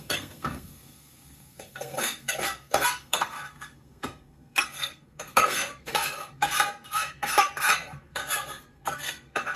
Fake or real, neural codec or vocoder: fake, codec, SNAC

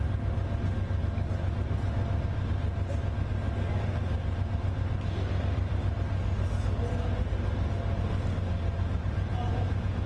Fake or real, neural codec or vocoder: real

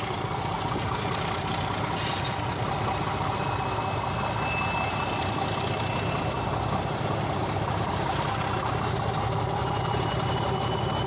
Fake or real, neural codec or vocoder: real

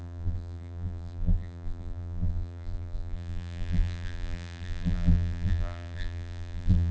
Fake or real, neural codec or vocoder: fake, vocoder, BigVGAN v2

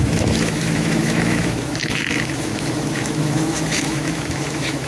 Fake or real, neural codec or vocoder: fake, autoencoder, DAC-VAE